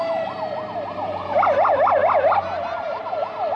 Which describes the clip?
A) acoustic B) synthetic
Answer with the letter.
A